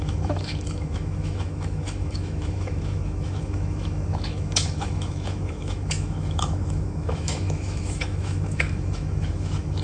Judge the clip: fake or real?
fake